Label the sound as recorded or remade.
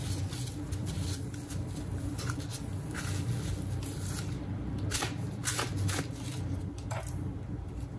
recorded